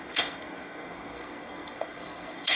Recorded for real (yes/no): no